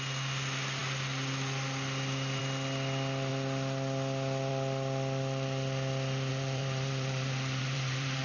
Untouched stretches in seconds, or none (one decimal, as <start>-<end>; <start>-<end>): 0.0-6.3